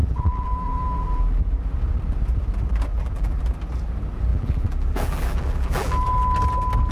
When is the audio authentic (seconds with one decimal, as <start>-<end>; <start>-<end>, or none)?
1.2-2.9; 3.4-4.3; 6.1-6.9